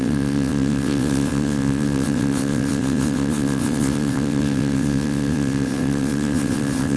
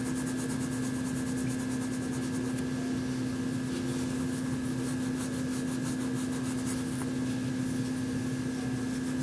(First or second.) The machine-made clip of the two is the first